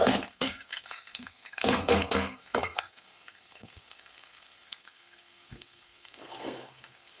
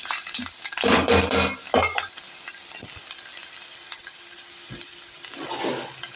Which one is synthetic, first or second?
first